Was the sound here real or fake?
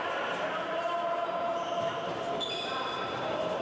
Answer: fake